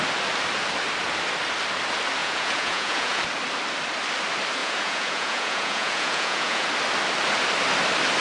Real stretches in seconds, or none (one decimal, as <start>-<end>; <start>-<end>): 0.0-2.2; 3.2-4.6; 6.7-8.2